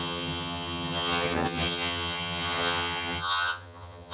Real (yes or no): no